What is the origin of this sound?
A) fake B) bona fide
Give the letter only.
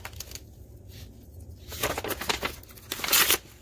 B